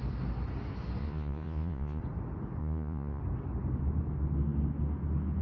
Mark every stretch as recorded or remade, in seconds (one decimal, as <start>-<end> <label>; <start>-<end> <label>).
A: 0.0-1.0 recorded; 1.0-2.0 remade; 2.0-2.6 recorded; 2.6-3.2 remade; 3.2-5.4 recorded